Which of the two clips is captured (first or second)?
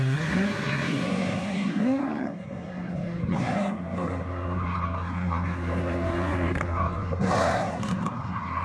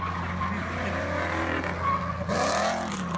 second